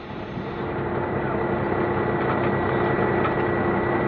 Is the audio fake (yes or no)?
no